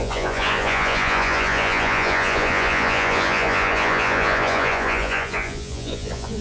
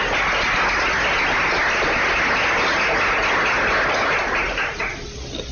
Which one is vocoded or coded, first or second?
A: first